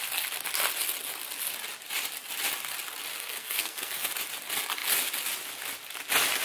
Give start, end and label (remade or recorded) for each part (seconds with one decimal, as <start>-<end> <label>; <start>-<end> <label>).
0.0-3.1 recorded; 3.1-4.1 remade; 4.1-6.4 recorded